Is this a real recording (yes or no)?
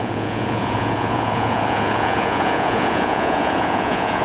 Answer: no